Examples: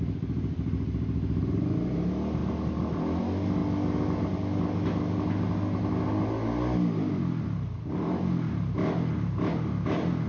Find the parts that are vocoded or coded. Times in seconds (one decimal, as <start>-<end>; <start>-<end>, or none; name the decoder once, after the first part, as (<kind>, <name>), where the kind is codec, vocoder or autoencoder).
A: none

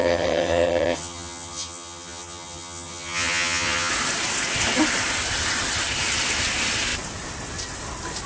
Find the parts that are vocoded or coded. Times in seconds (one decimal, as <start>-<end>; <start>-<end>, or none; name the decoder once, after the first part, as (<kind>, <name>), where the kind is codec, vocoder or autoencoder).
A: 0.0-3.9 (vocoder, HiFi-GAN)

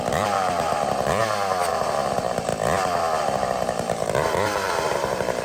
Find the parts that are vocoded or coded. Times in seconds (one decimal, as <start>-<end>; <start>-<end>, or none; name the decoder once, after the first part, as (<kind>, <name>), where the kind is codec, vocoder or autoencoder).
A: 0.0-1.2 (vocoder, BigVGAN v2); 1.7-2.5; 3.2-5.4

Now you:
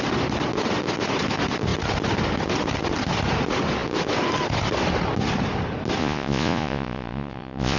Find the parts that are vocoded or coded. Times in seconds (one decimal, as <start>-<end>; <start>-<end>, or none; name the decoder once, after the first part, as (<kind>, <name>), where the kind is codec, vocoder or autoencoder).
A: 6.0-7.8 (vocoder, Vocos)

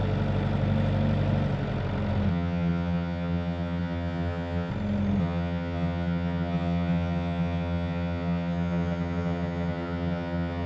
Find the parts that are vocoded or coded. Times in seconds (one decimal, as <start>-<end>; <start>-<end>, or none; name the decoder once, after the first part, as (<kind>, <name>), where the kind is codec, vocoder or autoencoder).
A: 2.3-4.7 (vocoder, HiFi-GAN); 5.2-10.7

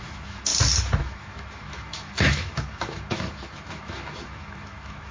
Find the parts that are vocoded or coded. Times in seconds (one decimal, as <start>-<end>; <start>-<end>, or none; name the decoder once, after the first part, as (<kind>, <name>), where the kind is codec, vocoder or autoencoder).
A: 0.0-0.5 (autoencoder, DAC-VAE); 1.0-5.1